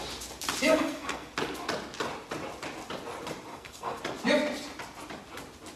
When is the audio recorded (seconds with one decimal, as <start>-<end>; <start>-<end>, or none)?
0.0-0.7; 1.3-3.5; 4.0-5.8